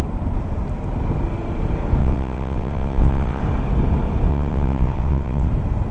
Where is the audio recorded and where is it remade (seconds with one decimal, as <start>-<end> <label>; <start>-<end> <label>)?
0.0-2.0 recorded; 2.0-3.4 remade; 3.4-4.3 recorded; 4.3-5.5 remade; 5.5-5.9 recorded